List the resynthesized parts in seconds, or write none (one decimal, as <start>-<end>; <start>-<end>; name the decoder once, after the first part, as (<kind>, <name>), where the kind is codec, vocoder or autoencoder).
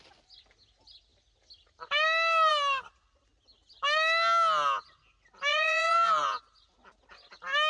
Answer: 5.5-6.4 (vocoder, Vocos)